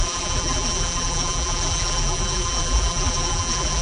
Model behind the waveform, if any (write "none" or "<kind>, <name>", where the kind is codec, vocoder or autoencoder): vocoder, BigVGAN v2